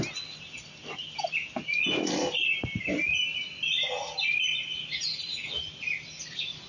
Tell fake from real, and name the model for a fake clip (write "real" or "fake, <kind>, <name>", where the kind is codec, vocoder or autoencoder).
real